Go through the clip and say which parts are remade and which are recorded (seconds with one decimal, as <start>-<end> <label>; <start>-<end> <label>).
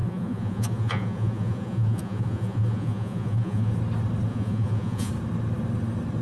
0.0-3.7 remade; 3.7-4.3 recorded; 4.3-5.1 remade; 5.1-6.2 recorded